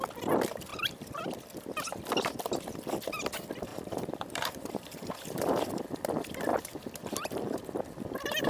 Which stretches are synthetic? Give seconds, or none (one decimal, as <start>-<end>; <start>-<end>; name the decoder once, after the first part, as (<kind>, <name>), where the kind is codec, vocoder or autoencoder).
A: 0.7-1.2 (vocoder, BigVGAN v2); 3.7-5.8; 6.5-7.6